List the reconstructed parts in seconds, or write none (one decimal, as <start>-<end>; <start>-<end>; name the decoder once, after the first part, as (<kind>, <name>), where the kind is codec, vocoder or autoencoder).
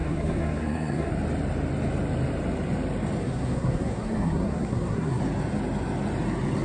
0.0-1.1 (codec, SNAC); 3.2-5.2